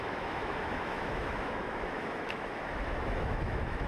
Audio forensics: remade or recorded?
remade